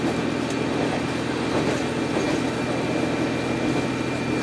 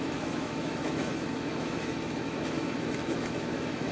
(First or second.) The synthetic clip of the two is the second